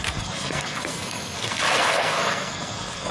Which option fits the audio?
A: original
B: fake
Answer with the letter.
B